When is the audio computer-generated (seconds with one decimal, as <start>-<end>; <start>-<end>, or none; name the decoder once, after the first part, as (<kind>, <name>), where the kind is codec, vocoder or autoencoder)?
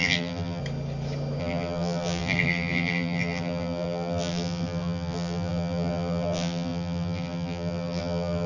0.0-0.6 (vocoder, BigVGAN v2); 1.4-8.5